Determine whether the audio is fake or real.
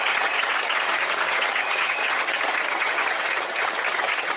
fake